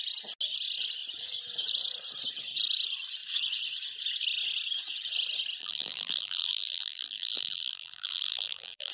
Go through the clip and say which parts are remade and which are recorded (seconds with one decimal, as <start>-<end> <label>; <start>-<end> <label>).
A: 0.0-5.6 recorded; 5.6-8.9 remade